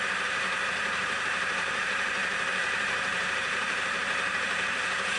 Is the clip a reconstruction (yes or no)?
yes